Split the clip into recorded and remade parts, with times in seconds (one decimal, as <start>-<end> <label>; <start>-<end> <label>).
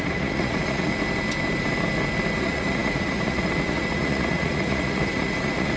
0.0-0.9 remade; 0.9-2.4 recorded; 2.4-5.8 remade